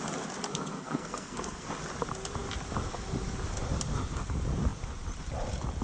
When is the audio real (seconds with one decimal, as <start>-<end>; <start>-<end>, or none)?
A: 0.0-0.5; 1.7-5.8

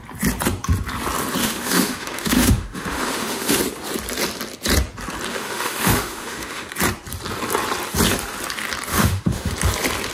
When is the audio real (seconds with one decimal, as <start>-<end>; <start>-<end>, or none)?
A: 0.0-1.4; 3.6-5.3; 6.7-8.9; 9.5-10.1

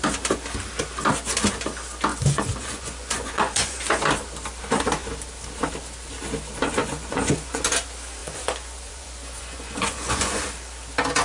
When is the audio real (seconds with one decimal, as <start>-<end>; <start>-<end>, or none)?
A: 0.0-2.1; 3.8-6.8; 7.6-8.2; 10.4-11.2